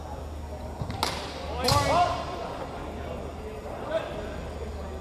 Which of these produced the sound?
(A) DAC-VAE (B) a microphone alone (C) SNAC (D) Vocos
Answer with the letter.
B